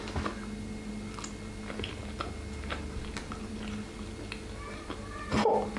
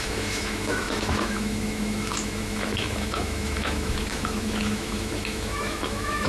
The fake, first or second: second